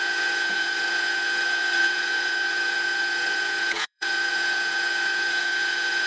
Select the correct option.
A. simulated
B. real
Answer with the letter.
A